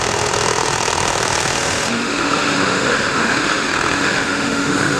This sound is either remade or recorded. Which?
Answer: remade